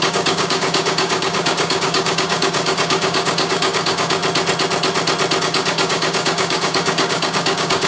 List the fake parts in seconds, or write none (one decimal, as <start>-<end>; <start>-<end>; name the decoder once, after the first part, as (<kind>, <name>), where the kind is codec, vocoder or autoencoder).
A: 0.0-4.2 (codec, DAC); 5.4-7.9